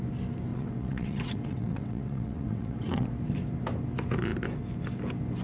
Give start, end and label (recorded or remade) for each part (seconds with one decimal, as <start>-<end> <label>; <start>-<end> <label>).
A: 0.0-0.5 recorded; 0.5-3.1 remade; 3.1-5.4 recorded